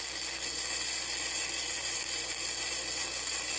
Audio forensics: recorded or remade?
recorded